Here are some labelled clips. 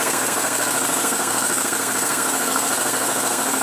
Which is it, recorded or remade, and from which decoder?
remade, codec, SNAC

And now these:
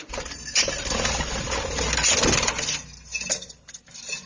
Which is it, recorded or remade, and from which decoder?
recorded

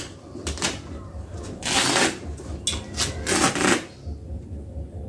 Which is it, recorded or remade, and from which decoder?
recorded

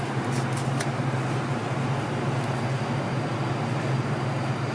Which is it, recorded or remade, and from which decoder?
recorded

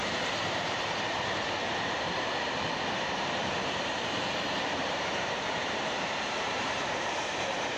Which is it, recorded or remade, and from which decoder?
remade, vocoder, BigVGAN v2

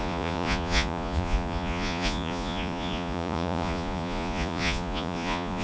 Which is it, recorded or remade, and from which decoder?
remade, vocoder, Vocos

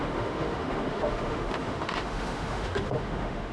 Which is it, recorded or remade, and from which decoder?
remade, autoencoder, DAC-VAE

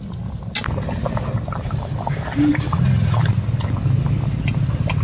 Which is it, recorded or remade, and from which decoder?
recorded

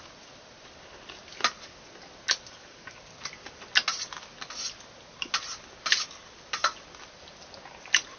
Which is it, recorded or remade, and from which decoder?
recorded